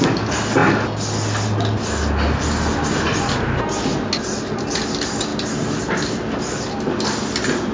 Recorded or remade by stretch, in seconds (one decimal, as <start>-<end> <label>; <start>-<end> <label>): 0.0-7.7 recorded